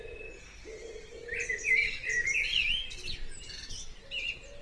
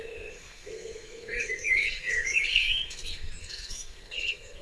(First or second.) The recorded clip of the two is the first